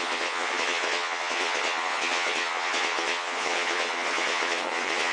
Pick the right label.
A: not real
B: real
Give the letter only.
A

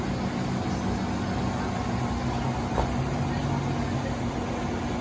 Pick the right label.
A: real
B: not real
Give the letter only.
A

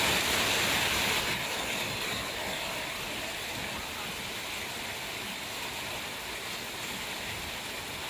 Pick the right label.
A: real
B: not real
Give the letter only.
A